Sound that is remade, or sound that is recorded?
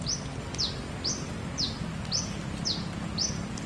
recorded